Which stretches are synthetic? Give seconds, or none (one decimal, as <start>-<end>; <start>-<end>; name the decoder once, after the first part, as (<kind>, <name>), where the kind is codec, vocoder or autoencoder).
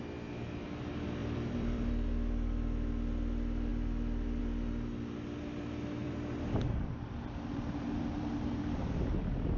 1.2-1.9 (vocoder, BigVGAN v2); 3.7-4.4; 6.0-8.3